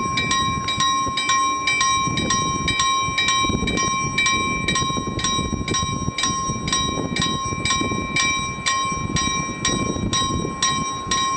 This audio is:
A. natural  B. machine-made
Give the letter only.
A